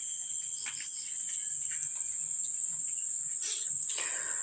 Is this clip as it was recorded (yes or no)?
yes